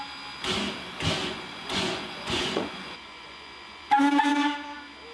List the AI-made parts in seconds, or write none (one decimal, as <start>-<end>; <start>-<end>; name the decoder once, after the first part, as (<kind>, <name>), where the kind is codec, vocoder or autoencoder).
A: 1.2-4.3 (vocoder, Vocos)